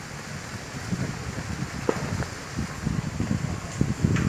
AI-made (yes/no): no